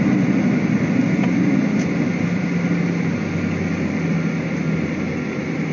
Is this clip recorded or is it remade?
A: recorded